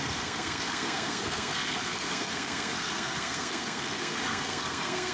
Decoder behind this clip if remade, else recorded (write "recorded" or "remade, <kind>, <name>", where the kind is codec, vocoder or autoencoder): remade, codec, SNAC